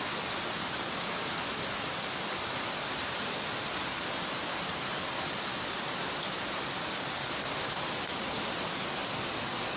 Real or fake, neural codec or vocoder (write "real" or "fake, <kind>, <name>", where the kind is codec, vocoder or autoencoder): real